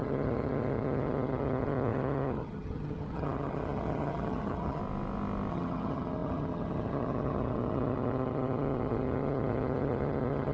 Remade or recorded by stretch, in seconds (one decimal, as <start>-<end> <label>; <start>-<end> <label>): 0.0-4.8 remade; 4.8-5.5 recorded; 5.5-10.5 remade